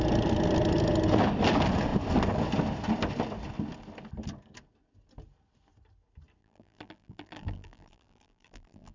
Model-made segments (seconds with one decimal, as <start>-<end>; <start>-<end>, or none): 6.4-8.9